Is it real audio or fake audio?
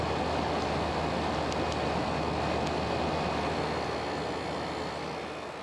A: real